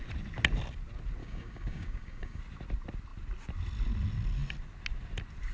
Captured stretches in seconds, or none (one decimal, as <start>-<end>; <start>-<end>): 0.0-1.2; 2.4-5.5